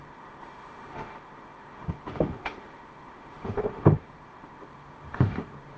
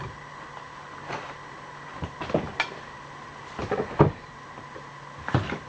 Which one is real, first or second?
second